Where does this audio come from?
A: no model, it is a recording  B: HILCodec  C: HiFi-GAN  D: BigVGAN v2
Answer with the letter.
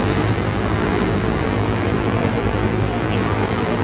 D